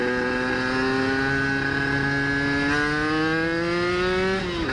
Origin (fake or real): real